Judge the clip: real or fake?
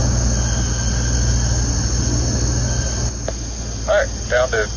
real